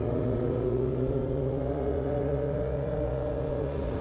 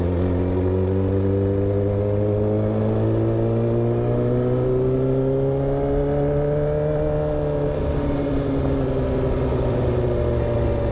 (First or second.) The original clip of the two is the second